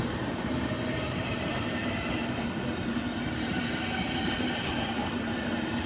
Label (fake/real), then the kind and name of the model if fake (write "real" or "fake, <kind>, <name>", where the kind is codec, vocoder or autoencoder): real